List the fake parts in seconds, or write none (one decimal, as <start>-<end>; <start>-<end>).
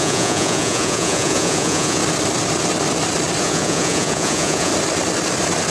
0.0-2.0; 3.4-4.7